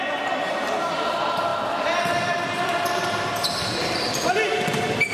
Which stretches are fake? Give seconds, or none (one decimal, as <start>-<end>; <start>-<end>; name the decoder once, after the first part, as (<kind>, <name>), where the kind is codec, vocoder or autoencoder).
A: none